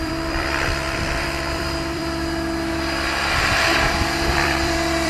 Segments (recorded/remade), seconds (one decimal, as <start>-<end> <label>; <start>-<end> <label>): 0.0-2.0 remade; 2.0-4.3 recorded; 4.3-5.1 remade